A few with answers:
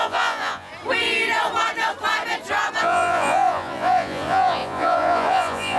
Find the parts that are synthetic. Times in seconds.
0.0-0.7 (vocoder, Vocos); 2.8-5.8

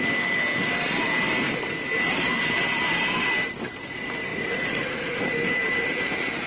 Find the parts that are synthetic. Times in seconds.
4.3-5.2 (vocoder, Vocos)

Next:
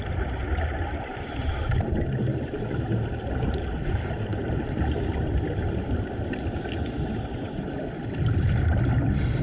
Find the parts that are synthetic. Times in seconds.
none

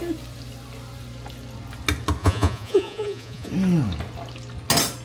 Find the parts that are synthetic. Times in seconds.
2.2-3.5 (vocoder, Vocos)

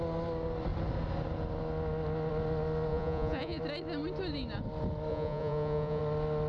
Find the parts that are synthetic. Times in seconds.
2.9-3.6 (vocoder, Vocos); 5.1-6.0

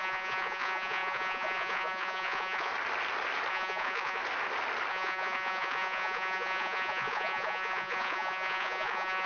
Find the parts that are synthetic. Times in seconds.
0.0-2.7 (vocoder, Vocos); 3.5-4.2; 4.9-9.3

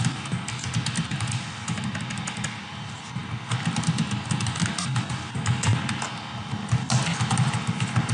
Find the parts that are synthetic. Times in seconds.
none